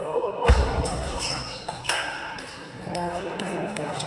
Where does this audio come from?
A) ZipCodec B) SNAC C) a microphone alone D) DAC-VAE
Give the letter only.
B